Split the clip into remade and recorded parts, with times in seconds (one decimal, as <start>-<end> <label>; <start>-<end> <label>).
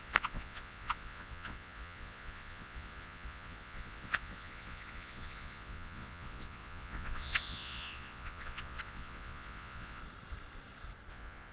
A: 0.0-10.0 remade; 10.0-11.1 recorded; 11.1-11.5 remade